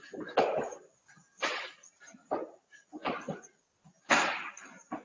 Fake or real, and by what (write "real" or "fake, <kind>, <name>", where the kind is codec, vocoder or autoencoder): real